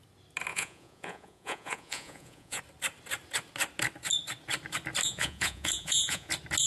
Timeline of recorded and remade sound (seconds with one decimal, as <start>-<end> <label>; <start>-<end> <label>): 0.0-0.5 recorded; 0.5-2.6 remade; 2.6-5.0 recorded; 5.0-6.3 remade; 6.3-6.7 recorded